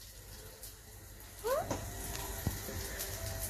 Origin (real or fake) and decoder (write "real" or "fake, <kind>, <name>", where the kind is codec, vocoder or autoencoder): real